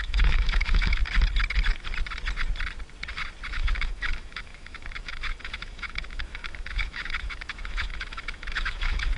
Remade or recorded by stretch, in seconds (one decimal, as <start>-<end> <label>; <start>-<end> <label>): 0.0-1.0 remade; 1.0-3.5 recorded; 3.5-9.2 remade